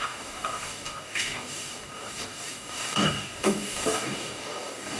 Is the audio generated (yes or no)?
yes